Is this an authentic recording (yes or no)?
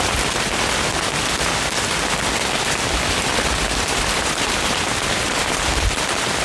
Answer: yes